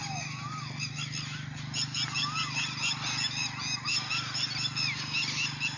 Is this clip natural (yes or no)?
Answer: yes